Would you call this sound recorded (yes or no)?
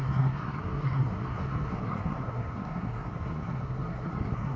no